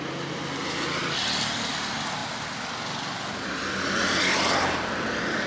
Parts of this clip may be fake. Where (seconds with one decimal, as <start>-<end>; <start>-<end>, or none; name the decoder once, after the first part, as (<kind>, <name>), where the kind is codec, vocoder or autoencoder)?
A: none